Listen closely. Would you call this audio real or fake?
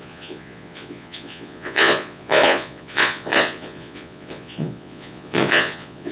fake